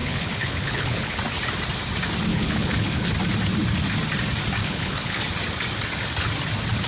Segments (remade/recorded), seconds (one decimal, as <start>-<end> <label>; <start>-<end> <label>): 0.0-1.2 remade; 1.2-2.3 recorded; 2.3-3.1 remade; 3.1-4.6 recorded; 4.6-5.2 remade; 5.2-6.9 recorded